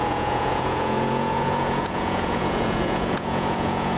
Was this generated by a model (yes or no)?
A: yes